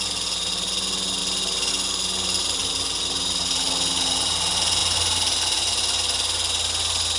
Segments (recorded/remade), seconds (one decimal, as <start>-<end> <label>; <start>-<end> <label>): 0.0-1.2 recorded; 1.2-1.7 remade; 1.7-7.2 recorded

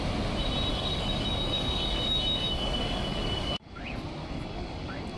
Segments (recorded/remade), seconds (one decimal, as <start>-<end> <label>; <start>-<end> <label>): 0.0-0.7 recorded; 0.7-3.8 remade; 3.8-4.2 recorded; 4.2-5.2 remade